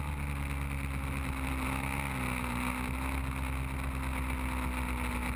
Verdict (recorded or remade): recorded